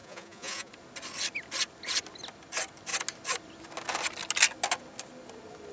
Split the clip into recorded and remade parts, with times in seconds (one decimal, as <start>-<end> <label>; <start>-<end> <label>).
0.0-0.7 remade; 0.7-5.7 recorded